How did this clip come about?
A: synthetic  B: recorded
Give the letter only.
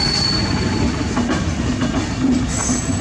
B